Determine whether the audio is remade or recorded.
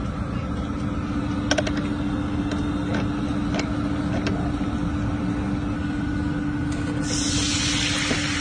recorded